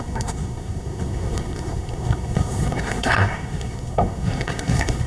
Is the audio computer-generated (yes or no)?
yes